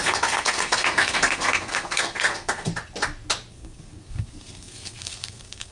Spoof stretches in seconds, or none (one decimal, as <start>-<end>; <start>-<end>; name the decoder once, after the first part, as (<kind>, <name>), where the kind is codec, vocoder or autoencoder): 0.0-2.7 (codec, SNAC); 3.5-5.7